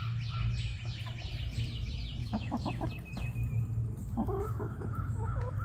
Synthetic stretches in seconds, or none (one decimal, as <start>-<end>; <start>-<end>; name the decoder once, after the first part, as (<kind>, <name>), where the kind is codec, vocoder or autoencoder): 2.2-2.9 (autoencoder, DAC-VAE); 4.0-5.6